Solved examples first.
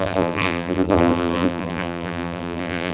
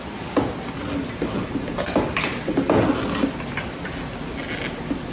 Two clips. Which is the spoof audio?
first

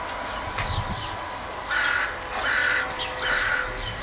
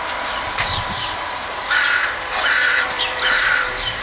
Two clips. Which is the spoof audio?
second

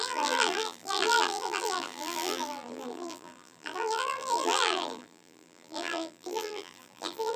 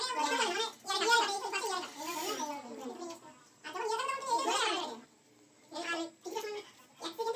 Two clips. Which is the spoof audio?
first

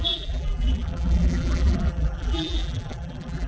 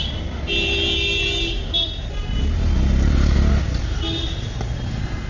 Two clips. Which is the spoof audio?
first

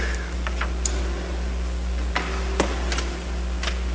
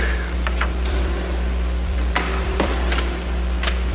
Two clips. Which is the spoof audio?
second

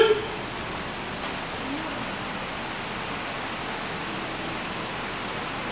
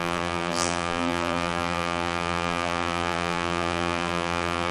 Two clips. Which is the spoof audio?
second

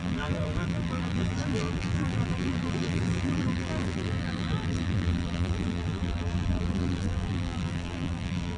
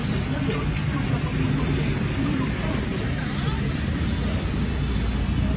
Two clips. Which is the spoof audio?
first